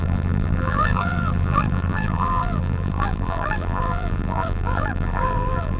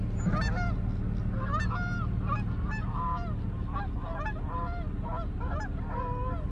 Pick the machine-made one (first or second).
first